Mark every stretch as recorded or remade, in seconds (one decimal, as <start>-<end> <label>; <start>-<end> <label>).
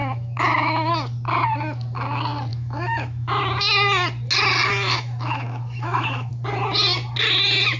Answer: 0.0-0.9 remade; 0.9-2.5 recorded; 2.5-3.4 remade; 3.4-4.7 recorded; 4.7-6.3 remade; 6.3-7.8 recorded